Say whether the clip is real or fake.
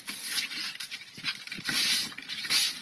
real